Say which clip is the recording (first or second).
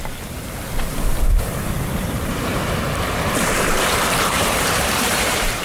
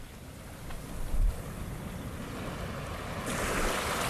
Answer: second